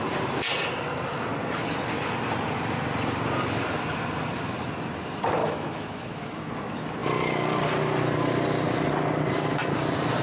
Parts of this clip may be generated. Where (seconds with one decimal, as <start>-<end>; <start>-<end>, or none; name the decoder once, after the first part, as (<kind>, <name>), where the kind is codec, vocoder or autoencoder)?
5.4-6.5 (autoencoder, DAC-VAE)